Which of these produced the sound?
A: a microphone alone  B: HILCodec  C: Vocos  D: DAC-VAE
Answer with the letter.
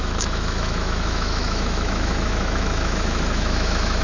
D